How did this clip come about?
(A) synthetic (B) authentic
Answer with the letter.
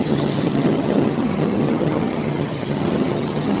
A